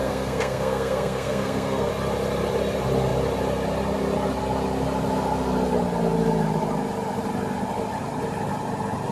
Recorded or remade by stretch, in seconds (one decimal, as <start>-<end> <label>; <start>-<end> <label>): 0.0-1.9 remade; 1.9-9.1 recorded